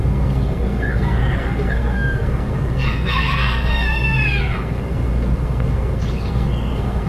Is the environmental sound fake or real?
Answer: fake